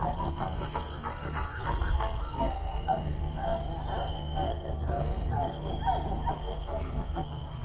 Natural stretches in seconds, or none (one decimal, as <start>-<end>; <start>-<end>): 3.6-4.1; 5.7-6.3